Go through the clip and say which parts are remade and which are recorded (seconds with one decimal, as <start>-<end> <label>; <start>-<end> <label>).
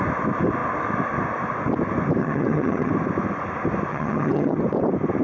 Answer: 0.0-2.2 recorded; 2.2-2.9 remade; 2.9-3.9 recorded; 3.9-4.6 remade; 4.6-5.2 recorded